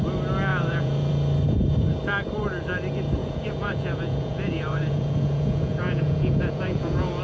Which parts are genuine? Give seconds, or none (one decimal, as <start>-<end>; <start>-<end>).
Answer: 0.0-0.5; 1.1-3.2